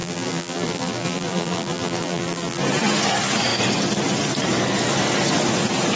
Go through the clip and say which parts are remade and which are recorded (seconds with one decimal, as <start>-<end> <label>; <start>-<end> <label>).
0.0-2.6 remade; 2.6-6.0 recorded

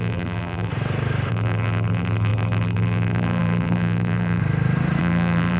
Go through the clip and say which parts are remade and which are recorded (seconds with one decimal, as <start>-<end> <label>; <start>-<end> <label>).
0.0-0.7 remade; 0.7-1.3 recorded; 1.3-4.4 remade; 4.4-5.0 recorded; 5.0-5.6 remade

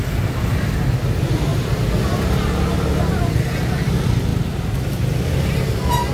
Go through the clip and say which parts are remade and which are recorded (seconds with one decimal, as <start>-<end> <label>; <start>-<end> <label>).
0.0-1.5 remade; 1.5-3.1 recorded; 3.1-4.3 remade; 4.3-6.1 recorded